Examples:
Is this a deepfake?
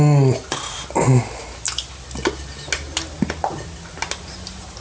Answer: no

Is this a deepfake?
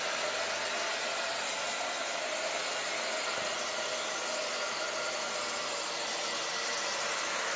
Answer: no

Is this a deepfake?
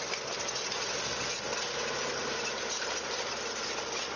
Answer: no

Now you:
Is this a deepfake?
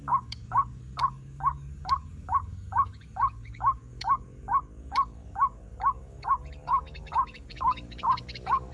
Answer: yes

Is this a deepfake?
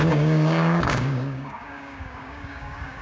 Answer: yes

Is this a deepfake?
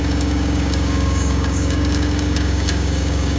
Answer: yes